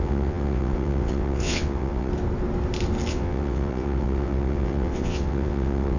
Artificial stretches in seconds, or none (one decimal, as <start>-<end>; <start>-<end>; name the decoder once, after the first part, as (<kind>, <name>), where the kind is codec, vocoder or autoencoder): 0.0-2.1 (vocoder, WaveNeXt); 3.1-6.0